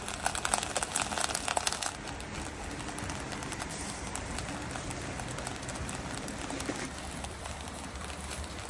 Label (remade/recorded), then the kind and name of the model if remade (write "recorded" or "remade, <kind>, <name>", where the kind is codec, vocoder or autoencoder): recorded